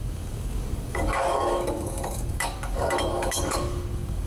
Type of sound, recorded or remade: remade